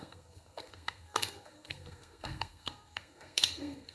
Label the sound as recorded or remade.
remade